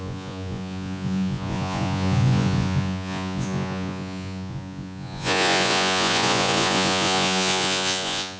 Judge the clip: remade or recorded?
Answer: remade